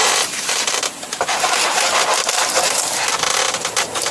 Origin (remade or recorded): remade